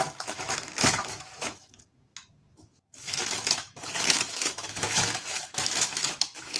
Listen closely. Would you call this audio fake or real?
fake